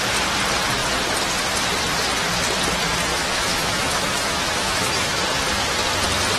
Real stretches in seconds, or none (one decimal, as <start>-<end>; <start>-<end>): 0.0-3.1; 5.2-6.4